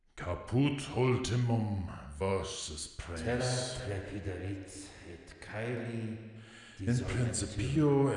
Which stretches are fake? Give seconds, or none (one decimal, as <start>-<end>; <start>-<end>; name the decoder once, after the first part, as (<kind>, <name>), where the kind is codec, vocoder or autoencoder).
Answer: 2.3-3.4 (autoencoder, DAC-VAE); 4.0-4.5